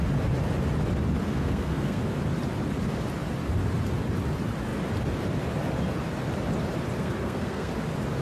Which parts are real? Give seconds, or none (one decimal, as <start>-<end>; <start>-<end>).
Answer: 0.0-1.2; 2.0-7.0; 7.7-8.2